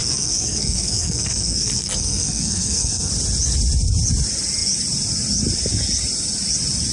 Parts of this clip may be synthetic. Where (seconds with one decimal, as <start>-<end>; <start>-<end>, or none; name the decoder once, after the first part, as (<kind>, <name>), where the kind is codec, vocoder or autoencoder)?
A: 0.0-3.1 (codec, SNAC)